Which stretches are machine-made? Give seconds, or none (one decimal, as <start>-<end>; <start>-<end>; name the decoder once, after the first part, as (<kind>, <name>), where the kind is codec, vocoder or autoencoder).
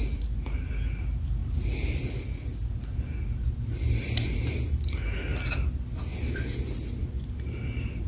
none